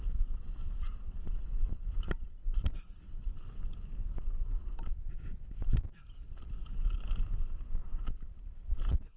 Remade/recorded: remade